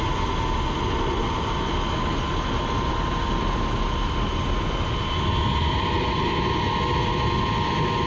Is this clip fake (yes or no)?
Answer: no